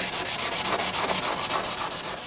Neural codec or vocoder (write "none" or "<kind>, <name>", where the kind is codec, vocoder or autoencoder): none